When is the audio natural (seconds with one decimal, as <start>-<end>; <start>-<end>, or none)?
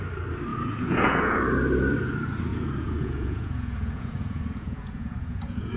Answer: 0.0-0.5; 1.4-2.5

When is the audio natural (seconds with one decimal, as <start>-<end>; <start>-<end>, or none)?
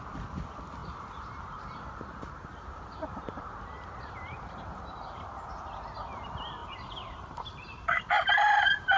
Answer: 0.0-0.8; 5.5-6.6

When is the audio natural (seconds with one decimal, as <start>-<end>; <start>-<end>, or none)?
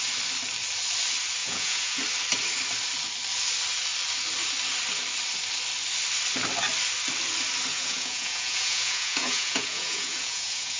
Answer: 0.0-1.4; 2.0-7.7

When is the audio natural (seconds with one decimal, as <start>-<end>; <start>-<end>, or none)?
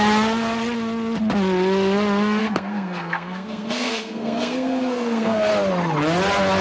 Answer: 0.0-2.4; 5.5-6.6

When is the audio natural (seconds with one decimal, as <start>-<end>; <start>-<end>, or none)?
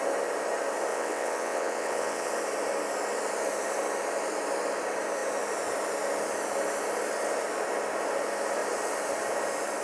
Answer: 0.0-0.9; 2.3-9.8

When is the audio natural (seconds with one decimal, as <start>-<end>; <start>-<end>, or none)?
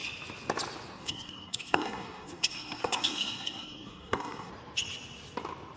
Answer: 0.0-1.0; 4.5-5.8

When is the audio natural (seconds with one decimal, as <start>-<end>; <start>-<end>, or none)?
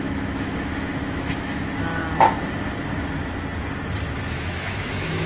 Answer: 2.0-4.3